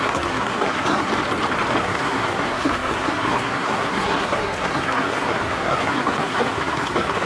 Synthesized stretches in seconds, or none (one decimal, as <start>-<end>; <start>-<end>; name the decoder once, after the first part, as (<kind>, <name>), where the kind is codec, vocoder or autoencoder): 0.0-1.1 (codec, SNAC); 1.8-7.3